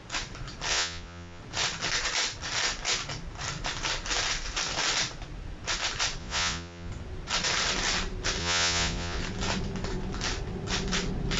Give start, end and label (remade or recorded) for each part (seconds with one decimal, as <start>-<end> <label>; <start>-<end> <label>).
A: 0.0-0.7 recorded; 0.7-1.4 remade; 1.4-6.2 recorded; 6.2-6.9 remade; 6.9-8.4 recorded; 8.4-9.2 remade; 9.2-11.4 recorded